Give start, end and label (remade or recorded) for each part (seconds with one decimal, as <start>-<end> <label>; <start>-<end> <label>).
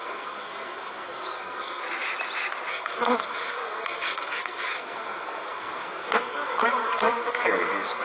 0.0-1.8 remade; 1.8-2.7 recorded; 2.7-8.0 remade